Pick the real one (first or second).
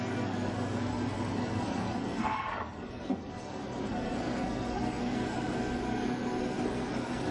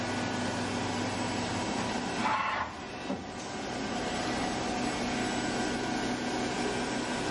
second